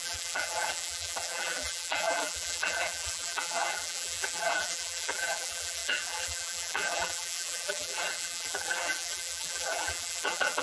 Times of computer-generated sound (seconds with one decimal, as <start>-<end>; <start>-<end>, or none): 0.0-10.6